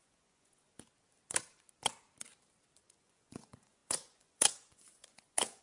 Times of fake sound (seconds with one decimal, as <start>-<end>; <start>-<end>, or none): 0.0-0.7; 2.8-5.6